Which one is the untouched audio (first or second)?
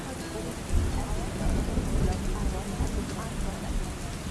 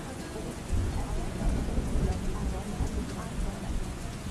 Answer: first